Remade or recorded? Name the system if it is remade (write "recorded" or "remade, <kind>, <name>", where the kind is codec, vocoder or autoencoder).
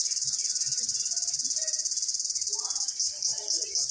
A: recorded